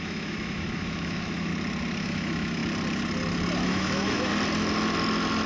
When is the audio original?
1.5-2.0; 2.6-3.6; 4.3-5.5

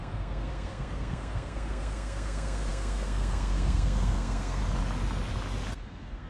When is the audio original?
4.6-5.7

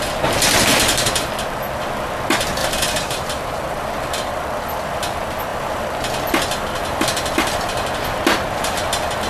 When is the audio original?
0.0-0.7; 1.3-2.6; 3.9-9.3